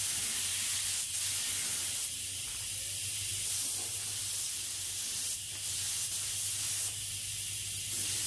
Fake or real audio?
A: real